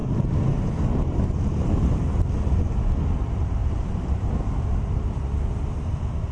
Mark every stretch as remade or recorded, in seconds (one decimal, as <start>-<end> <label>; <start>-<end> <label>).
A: 0.0-0.7 remade; 0.7-1.1 recorded; 1.1-2.0 remade; 2.0-3.6 recorded; 3.6-4.3 remade; 4.3-6.3 recorded